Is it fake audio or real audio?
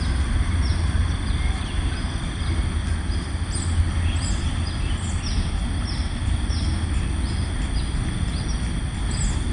real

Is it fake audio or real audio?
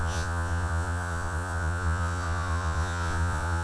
fake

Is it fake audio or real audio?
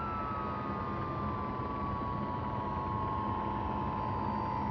real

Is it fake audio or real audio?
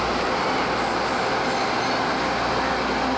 real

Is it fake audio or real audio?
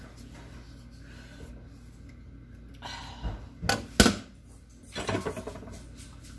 real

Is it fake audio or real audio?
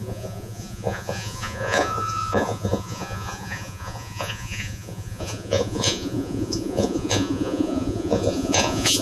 fake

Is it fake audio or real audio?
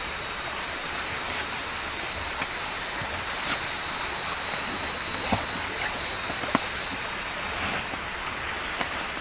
real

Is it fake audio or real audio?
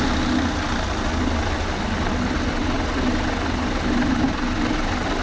real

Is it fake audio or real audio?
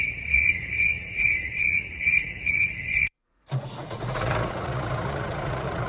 fake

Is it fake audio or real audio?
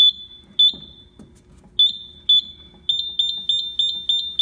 real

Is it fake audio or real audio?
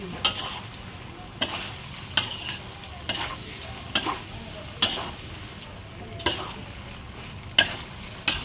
real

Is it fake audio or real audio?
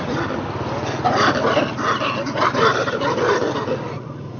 real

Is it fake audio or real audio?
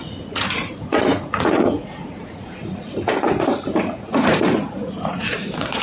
fake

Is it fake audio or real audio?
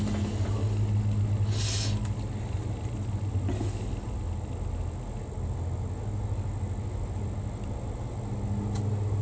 real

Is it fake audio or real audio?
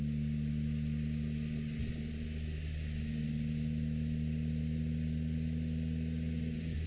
real